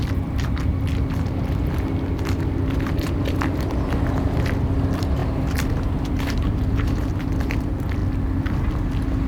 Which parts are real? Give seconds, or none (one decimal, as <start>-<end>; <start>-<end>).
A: 0.0-5.2; 7.6-9.3